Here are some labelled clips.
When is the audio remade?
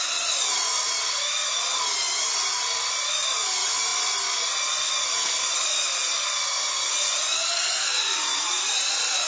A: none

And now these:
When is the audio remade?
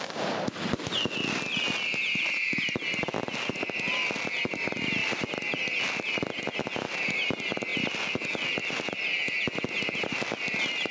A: none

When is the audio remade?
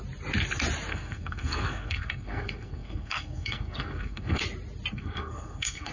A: 0.9-4.4; 4.9-5.9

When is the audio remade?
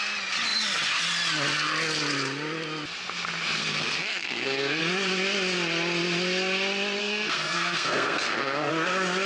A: 3.6-4.8; 7.0-8.7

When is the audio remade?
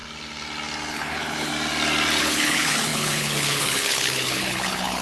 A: 0.9-1.5; 2.2-5.0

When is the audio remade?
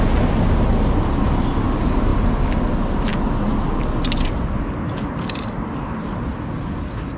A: none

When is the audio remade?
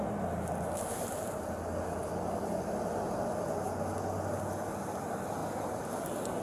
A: 5.4-6.4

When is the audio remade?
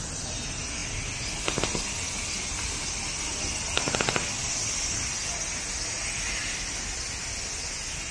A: none